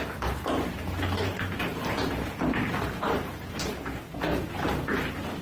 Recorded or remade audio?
remade